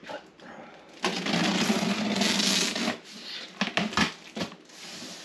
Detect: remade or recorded recorded